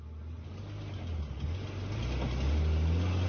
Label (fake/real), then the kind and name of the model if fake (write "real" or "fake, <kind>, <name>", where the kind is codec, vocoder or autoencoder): real